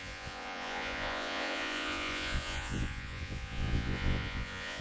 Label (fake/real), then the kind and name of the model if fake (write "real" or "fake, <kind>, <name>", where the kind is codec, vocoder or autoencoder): fake, vocoder, Vocos